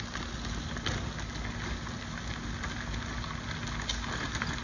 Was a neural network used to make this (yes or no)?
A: no